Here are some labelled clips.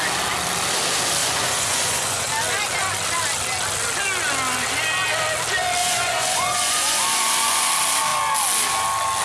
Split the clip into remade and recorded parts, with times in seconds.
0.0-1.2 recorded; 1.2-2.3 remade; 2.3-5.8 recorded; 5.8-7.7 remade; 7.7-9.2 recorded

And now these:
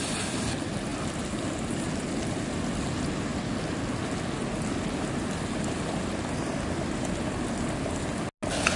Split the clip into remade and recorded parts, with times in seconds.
0.0-8.8 recorded

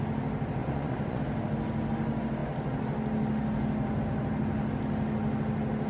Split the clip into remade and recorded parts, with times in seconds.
0.0-0.6 recorded; 0.6-1.2 remade; 1.2-5.9 recorded

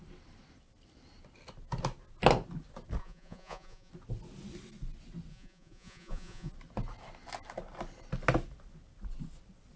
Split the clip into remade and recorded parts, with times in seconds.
0.0-3.0 recorded; 3.0-3.9 remade; 3.9-5.3 recorded; 5.3-6.5 remade; 6.5-9.8 recorded

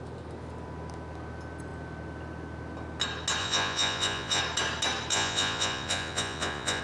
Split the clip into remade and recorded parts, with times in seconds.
0.0-3.4 recorded; 3.4-4.4 remade; 4.4-5.1 recorded; 5.1-6.8 remade

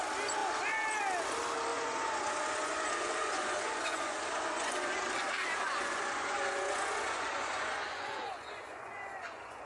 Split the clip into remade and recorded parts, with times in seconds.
0.0-1.7 recorded; 1.7-5.0 remade; 5.0-5.5 recorded; 5.5-9.7 remade

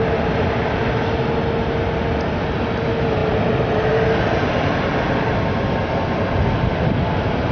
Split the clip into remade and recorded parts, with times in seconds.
0.0-7.5 recorded

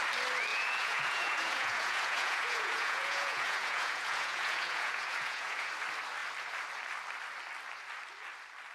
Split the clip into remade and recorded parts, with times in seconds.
0.0-0.5 recorded; 0.5-5.7 remade; 5.7-8.7 recorded